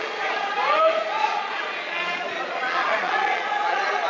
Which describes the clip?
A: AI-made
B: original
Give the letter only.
A